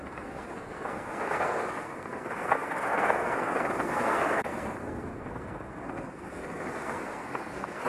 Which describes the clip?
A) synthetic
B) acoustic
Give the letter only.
A